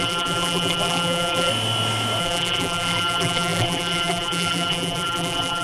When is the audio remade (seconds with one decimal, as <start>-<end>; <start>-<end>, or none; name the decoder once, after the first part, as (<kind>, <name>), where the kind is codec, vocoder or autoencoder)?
0.0-1.5 (vocoder, BigVGAN v2); 2.2-5.6